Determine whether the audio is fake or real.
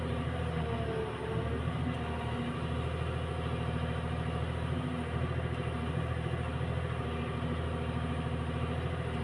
real